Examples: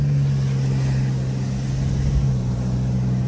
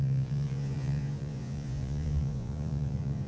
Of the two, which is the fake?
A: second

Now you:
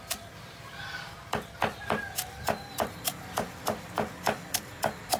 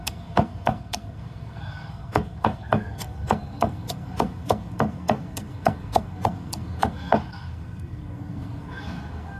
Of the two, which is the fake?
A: second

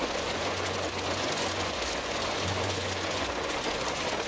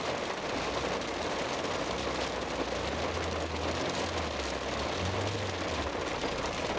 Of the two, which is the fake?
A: first